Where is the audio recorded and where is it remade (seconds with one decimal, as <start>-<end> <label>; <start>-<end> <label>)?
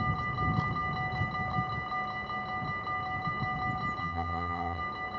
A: 0.0-4.0 recorded; 4.0-4.8 remade; 4.8-5.2 recorded